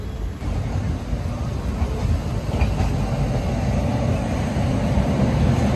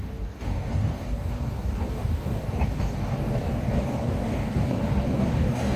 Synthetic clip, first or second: second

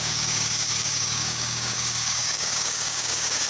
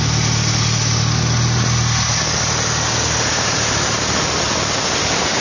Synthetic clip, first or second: first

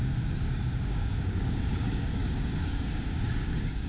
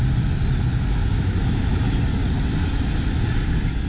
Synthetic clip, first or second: first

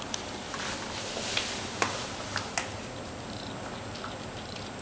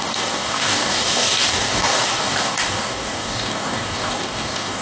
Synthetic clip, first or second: second